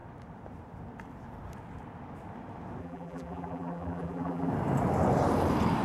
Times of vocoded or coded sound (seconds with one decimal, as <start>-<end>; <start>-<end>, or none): 2.8-4.5